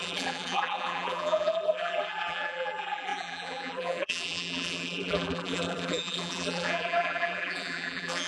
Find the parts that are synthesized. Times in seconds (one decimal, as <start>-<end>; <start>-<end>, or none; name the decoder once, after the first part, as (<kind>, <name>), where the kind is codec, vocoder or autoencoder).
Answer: 0.0-8.3 (vocoder, BigVGAN v2)

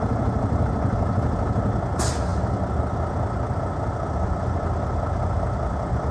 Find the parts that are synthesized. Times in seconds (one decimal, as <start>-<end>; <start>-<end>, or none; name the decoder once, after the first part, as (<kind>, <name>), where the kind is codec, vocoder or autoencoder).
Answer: none